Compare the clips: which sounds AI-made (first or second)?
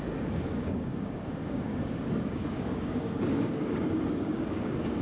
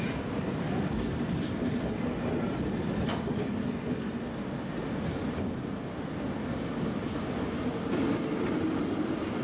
first